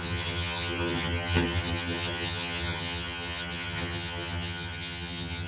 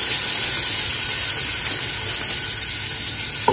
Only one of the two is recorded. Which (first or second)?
second